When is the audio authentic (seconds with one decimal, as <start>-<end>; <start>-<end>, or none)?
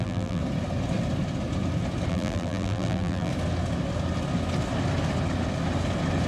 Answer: 0.4-2.1; 3.3-6.3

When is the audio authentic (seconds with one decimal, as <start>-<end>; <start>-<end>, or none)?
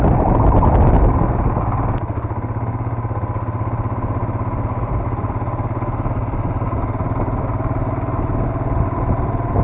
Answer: 0.0-9.6